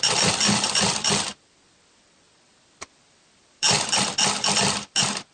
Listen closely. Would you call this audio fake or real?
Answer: fake